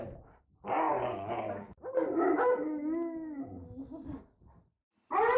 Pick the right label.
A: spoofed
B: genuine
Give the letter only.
B